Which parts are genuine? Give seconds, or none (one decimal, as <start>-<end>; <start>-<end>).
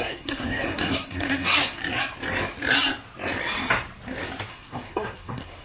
1.8-4.5